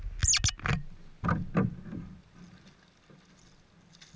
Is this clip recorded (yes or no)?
yes